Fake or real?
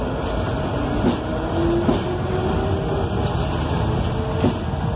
real